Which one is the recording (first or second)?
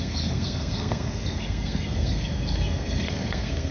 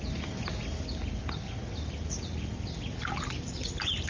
second